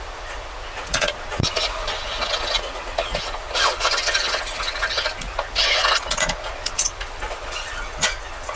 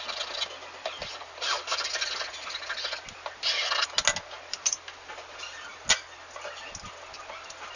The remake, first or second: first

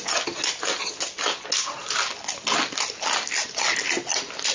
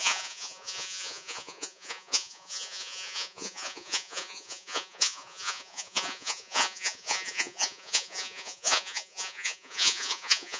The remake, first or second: second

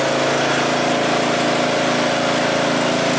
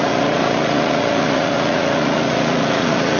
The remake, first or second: second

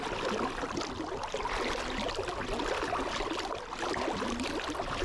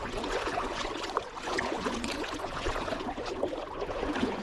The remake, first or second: second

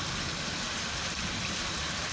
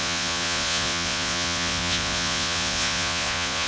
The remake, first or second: second